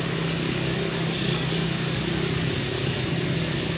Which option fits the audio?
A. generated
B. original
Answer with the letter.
A